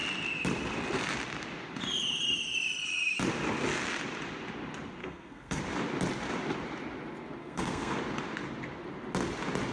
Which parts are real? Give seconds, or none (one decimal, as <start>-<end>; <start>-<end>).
0.0-5.0; 5.6-7.4; 8.0-9.7